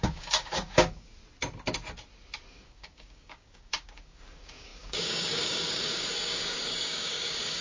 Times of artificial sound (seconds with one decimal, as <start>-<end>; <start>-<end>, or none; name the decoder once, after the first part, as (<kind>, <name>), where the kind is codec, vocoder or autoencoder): 0.0-1.1 (codec, DAC); 2.5-7.6